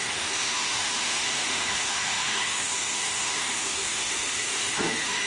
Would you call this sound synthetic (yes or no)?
yes